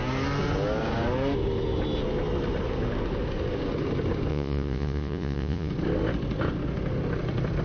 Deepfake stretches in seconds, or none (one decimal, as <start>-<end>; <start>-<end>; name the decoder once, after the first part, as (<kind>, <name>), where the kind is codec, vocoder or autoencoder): 4.3-5.7 (vocoder, Vocos)